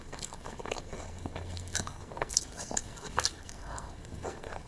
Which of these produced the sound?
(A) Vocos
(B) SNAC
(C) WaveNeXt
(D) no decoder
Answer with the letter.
B